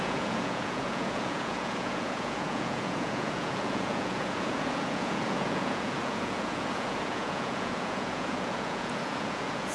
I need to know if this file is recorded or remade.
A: remade